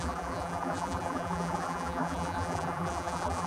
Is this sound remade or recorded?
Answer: remade